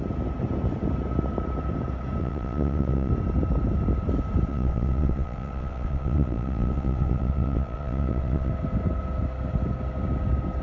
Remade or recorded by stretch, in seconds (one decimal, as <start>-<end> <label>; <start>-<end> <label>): 0.0-2.2 recorded; 2.2-3.1 remade; 3.1-4.5 recorded; 4.5-8.5 remade; 8.5-10.6 recorded